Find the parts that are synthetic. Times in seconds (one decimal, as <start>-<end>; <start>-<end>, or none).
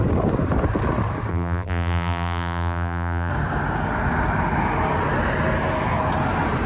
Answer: 1.3-3.3